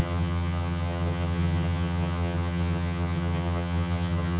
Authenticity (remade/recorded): remade